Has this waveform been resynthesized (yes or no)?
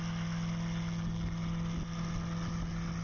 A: no